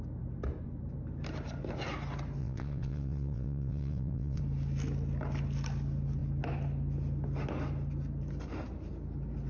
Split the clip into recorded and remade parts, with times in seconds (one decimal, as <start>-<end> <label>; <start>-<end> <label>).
0.0-2.4 recorded; 2.4-4.4 remade; 4.4-9.5 recorded